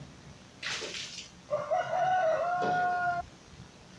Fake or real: real